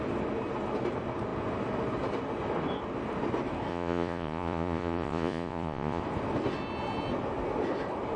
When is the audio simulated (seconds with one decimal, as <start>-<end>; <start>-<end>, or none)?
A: 3.7-6.0